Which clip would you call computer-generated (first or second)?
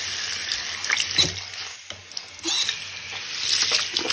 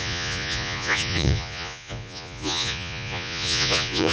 second